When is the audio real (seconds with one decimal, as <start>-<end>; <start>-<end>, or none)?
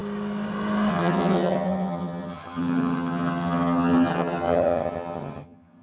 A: 0.0-0.9